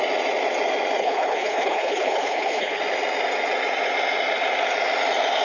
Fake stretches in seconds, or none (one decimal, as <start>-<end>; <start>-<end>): 1.0-2.8